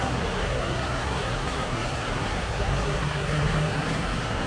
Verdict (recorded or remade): remade